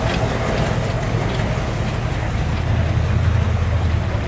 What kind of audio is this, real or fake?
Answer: real